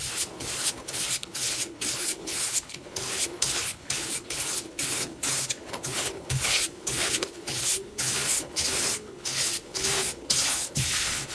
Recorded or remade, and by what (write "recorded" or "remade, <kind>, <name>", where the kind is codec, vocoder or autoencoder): remade, codec, HILCodec